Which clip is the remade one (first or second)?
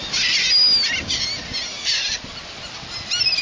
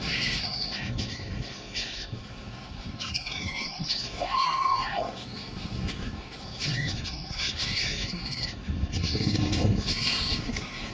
second